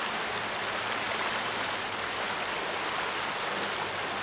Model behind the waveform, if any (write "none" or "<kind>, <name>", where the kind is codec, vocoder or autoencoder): none